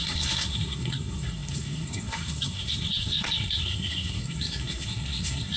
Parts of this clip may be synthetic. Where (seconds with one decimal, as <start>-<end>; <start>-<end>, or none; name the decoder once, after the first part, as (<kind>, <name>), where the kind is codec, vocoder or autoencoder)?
0.0-5.6 (codec, SNAC)